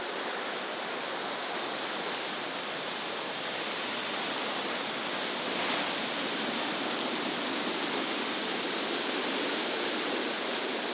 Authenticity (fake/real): real